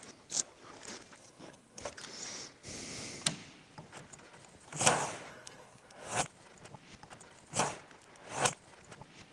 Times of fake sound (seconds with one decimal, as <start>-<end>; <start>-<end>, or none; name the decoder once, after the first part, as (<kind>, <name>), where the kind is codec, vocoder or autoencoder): 1.2-1.8 (codec, SNAC); 5.3-6.2